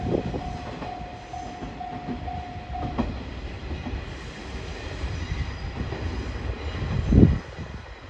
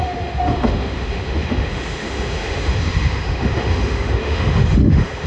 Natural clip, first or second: first